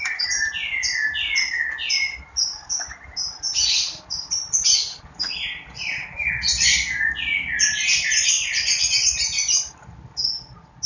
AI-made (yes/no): no